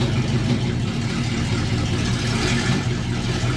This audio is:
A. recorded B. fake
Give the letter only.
B